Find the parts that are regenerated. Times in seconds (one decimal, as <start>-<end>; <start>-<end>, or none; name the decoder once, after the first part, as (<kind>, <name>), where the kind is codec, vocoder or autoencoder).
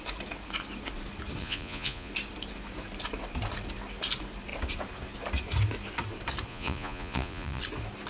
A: 1.4-2.1 (vocoder, Vocos); 6.5-7.6